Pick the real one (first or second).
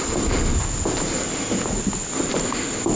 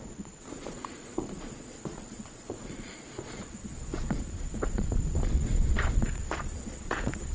first